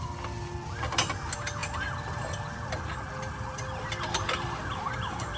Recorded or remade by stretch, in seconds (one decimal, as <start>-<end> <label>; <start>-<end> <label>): 0.0-5.4 recorded